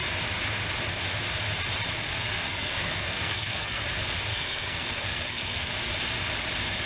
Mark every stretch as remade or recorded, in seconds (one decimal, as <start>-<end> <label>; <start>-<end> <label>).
0.0-2.1 recorded; 2.1-3.8 remade; 3.8-4.3 recorded; 4.3-5.7 remade; 5.7-6.9 recorded